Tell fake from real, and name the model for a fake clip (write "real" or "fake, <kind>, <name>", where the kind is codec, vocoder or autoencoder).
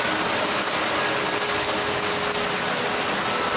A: real